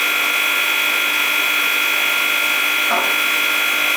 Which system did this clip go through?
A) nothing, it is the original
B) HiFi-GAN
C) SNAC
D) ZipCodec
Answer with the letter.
A